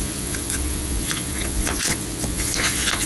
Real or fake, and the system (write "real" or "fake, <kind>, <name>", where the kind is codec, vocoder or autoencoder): fake, vocoder, Vocos